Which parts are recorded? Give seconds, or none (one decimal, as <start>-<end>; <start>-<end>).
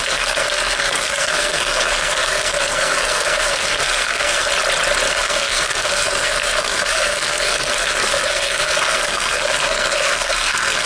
4.5-5.1